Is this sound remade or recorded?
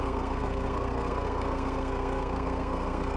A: remade